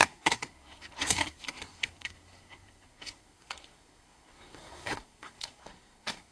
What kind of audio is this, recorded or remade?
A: remade